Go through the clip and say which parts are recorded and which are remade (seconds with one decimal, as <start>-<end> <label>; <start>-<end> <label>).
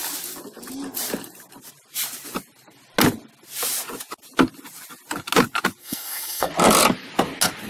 0.0-5.8 recorded; 5.8-6.5 remade; 6.5-7.7 recorded